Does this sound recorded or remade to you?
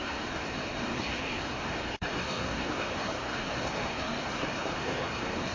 remade